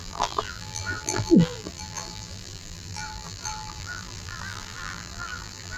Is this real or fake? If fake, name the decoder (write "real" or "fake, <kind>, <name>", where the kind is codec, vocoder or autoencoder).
fake, vocoder, BigVGAN v2